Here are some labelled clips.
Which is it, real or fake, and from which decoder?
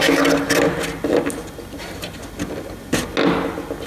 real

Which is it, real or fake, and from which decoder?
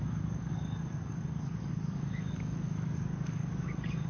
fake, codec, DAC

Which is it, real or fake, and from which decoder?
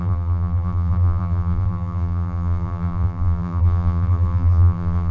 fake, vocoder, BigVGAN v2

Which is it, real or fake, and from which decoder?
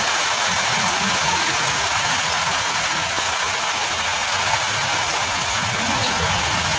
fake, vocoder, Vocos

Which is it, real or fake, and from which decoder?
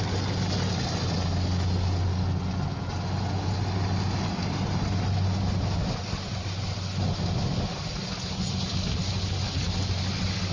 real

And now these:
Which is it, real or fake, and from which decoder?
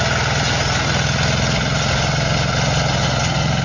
real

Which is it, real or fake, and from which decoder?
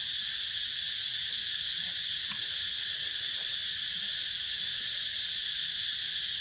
fake, vocoder, Vocos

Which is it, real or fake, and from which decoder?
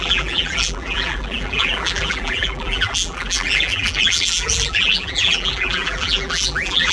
fake, vocoder, BigVGAN v2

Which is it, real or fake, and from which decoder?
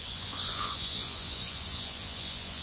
fake, vocoder, Vocos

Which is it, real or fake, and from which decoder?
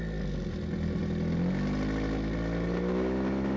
real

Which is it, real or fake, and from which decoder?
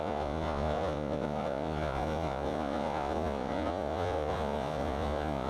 fake, vocoder, Vocos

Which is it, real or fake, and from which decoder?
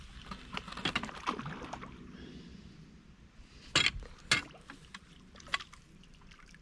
real